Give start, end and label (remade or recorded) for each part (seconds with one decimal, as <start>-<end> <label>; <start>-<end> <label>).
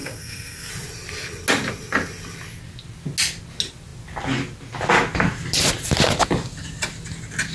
0.0-0.7 remade; 0.7-7.5 recorded